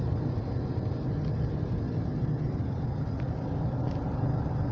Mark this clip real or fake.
real